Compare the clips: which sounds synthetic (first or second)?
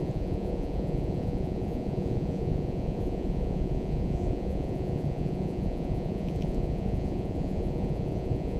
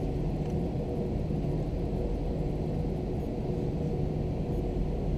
first